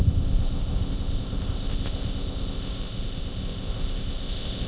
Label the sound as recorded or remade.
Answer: remade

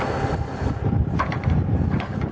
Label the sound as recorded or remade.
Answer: recorded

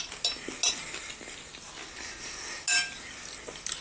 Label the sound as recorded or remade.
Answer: recorded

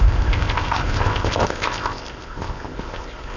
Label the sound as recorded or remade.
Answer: remade